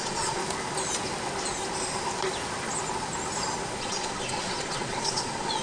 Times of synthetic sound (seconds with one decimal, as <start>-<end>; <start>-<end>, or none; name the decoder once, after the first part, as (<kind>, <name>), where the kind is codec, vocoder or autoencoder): 0.0-0.4 (vocoder, Vocos); 3.8-5.6